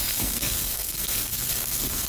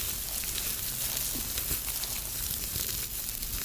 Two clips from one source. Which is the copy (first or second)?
first